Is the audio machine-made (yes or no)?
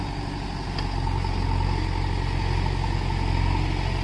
no